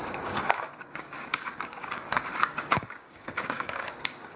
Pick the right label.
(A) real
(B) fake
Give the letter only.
B